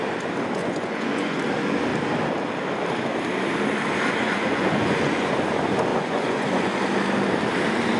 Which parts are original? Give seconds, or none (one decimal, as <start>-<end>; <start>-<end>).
0.0-0.6; 1.4-4.2; 5.3-5.9; 6.7-8.0